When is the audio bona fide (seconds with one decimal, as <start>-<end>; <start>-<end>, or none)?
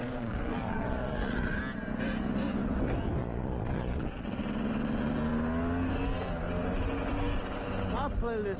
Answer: 1.6-3.2; 4.3-8.6